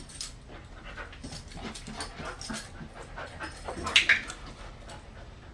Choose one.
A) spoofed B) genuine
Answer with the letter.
B